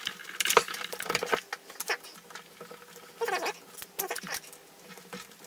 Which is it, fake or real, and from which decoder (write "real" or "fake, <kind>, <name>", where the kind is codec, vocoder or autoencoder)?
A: real